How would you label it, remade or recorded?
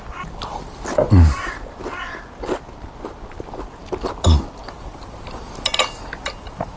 recorded